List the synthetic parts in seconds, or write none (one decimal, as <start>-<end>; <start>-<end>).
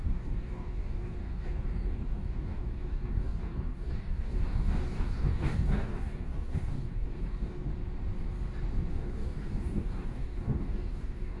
0.0-7.7; 8.9-11.4